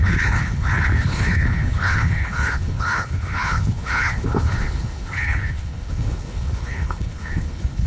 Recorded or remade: remade